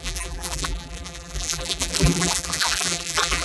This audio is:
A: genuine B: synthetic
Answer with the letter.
B